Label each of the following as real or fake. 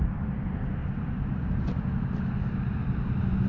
real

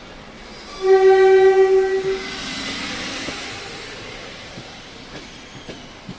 real